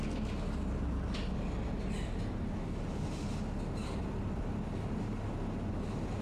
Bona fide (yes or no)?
yes